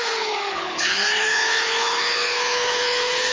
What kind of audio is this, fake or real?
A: fake